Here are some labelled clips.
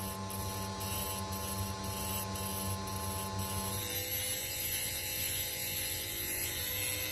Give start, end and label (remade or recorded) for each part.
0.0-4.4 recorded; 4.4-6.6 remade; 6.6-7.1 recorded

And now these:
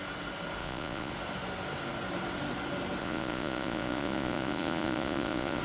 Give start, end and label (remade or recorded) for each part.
0.0-0.6 recorded; 0.6-1.1 remade; 1.1-3.0 recorded; 3.0-5.6 remade

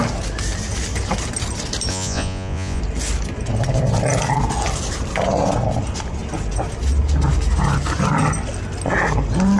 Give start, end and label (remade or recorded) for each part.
0.0-1.9 recorded; 1.9-2.8 remade; 2.8-9.6 recorded

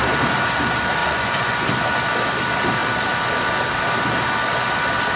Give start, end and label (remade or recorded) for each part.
0.0-1.0 recorded; 1.0-1.7 remade; 1.7-5.2 recorded

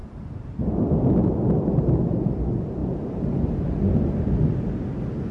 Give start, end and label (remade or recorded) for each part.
0.0-5.3 recorded

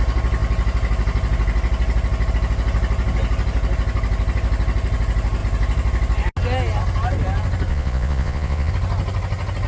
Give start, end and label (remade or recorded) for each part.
0.0-7.7 recorded; 7.7-8.7 remade; 8.7-9.7 recorded

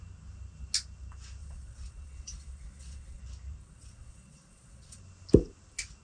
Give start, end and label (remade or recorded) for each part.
0.0-1.4 recorded; 1.4-3.2 remade; 3.2-3.6 recorded; 3.6-5.0 remade; 5.0-6.0 recorded